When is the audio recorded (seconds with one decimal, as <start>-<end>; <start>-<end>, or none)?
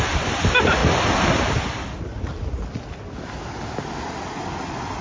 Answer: 0.0-5.0